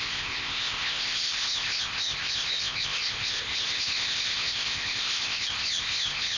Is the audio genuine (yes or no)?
no